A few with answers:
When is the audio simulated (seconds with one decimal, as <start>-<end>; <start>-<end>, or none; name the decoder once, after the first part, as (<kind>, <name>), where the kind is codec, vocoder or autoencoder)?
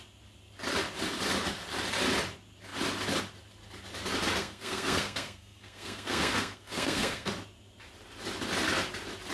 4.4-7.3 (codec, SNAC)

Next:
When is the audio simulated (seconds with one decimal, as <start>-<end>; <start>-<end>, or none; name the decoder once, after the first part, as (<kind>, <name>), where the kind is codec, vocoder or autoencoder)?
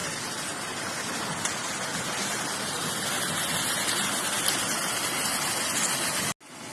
none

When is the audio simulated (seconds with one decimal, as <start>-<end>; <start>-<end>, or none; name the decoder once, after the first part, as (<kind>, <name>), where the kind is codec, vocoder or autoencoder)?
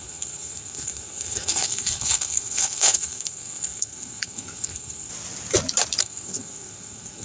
0.0-5.1 (codec, SNAC); 6.0-7.2